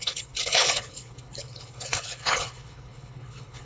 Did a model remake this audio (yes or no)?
yes